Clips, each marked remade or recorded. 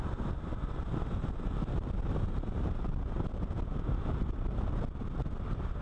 recorded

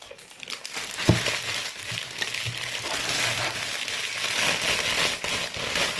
recorded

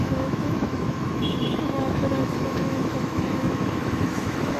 remade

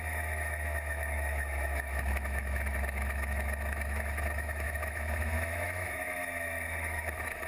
remade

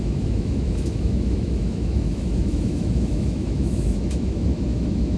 remade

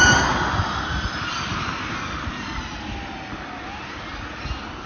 recorded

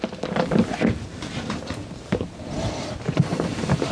recorded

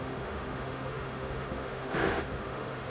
remade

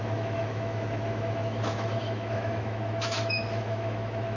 remade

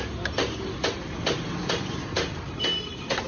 recorded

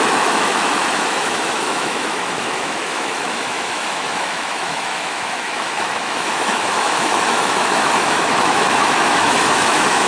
remade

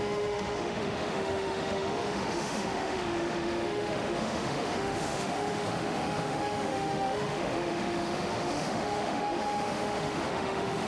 remade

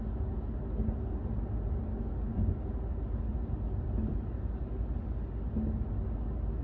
recorded